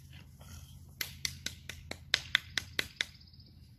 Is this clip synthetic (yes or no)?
no